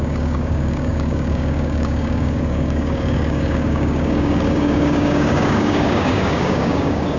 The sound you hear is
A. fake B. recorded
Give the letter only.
A